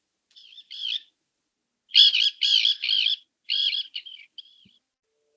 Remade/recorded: recorded